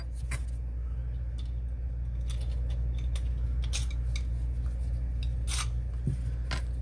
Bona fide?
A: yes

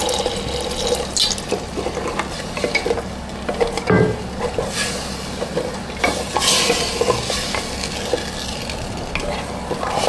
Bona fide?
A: yes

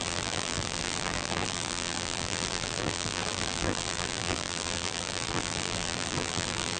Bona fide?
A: no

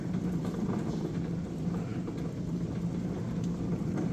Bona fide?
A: yes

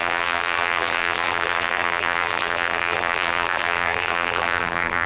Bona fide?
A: no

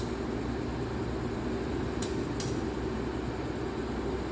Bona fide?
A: yes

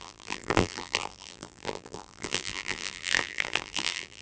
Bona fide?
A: no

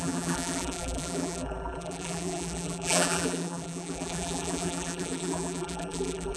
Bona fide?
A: no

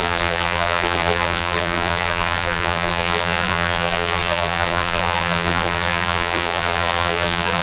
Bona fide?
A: no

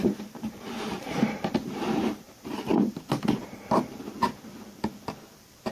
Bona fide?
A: no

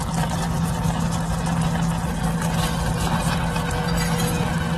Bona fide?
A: yes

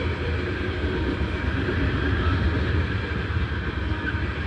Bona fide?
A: no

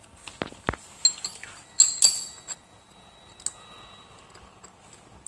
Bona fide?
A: yes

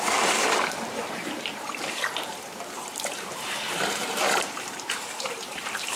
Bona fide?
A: no